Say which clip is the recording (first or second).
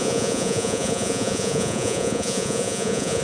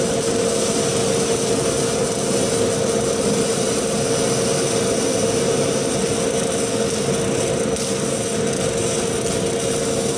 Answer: second